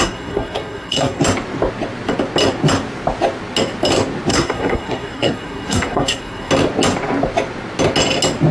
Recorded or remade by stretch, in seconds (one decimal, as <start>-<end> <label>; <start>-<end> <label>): 0.0-1.2 remade; 1.2-4.3 recorded; 4.3-6.5 remade; 6.5-8.5 recorded